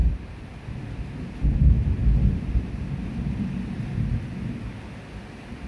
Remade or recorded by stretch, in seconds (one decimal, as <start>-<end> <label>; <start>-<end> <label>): 0.0-5.7 recorded